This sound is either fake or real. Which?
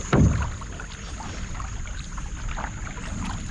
real